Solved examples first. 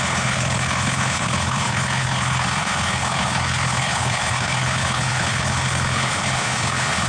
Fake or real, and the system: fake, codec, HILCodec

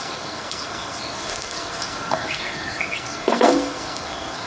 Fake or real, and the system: fake, codec, SNAC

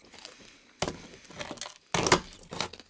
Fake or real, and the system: real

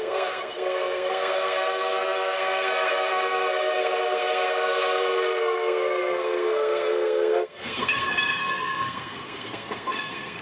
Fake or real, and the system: fake, codec, SNAC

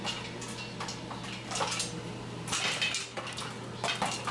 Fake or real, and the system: real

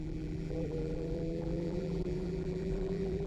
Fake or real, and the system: fake, vocoder, BigVGAN v2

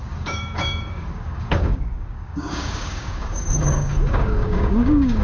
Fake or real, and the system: fake, codec, DAC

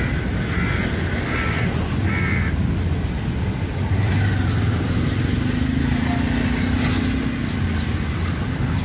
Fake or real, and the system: real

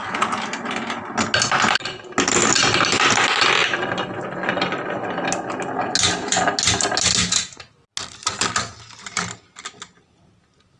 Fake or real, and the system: real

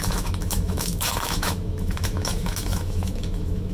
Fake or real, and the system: fake, autoencoder, DAC-VAE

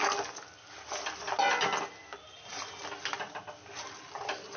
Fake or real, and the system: real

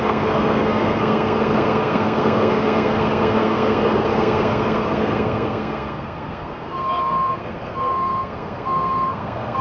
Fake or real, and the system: fake, codec, SNAC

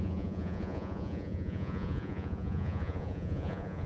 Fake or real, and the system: fake, vocoder, Vocos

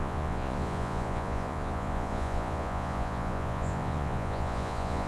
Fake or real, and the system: fake, vocoder, Vocos